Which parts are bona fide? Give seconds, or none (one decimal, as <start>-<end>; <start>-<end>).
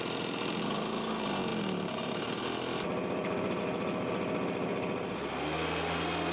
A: 0.0-6.3